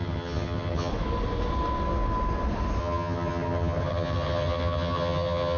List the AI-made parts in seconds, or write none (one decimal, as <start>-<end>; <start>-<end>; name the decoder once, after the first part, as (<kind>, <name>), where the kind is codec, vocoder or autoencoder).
0.0-0.9 (vocoder, HiFi-GAN); 2.8-5.6